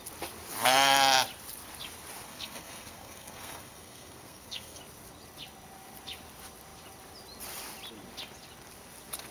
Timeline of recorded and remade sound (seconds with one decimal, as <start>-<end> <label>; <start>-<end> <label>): 0.0-2.3 recorded; 2.3-4.8 remade; 4.8-9.3 recorded